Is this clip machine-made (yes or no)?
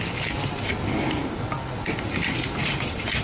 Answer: no